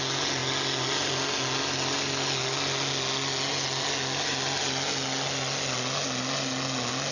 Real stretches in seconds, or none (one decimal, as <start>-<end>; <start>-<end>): 0.0-7.1